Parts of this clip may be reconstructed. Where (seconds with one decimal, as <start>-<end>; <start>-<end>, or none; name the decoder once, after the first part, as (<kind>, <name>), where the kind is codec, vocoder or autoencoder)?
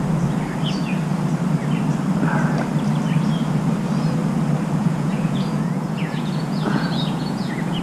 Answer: 4.8-7.8 (vocoder, Vocos)